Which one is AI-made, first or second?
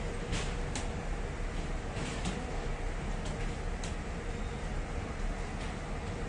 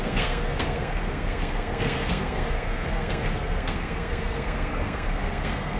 second